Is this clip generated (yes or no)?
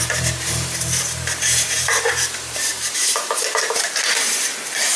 yes